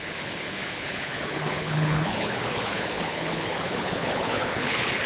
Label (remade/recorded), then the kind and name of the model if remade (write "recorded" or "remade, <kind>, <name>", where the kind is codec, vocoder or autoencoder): remade, codec, HILCodec